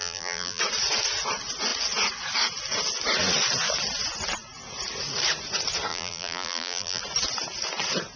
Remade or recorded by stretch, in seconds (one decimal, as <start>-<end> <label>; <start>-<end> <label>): 0.0-0.6 remade; 0.6-5.9 recorded; 5.9-7.0 remade; 7.0-8.2 recorded

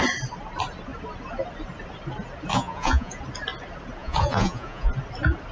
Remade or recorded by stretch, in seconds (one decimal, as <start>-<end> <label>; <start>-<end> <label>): 0.0-2.5 recorded; 2.5-3.2 remade; 3.2-4.0 recorded; 4.0-4.9 remade; 4.9-5.5 recorded